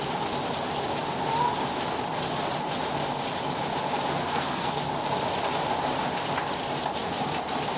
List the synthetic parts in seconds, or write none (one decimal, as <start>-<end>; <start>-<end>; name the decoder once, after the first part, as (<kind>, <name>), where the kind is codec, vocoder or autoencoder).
4.2-4.8 (codec, SNAC)